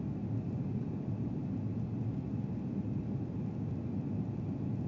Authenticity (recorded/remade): recorded